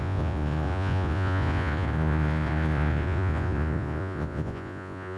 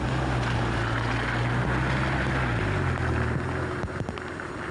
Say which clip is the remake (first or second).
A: first